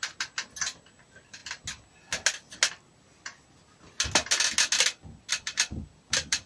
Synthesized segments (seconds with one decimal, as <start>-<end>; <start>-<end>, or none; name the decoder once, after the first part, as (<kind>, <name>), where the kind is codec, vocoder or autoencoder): 0.0-1.4 (vocoder, BigVGAN v2); 5.3-6.5